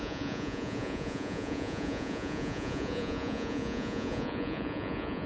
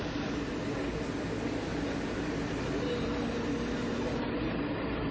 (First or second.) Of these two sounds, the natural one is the second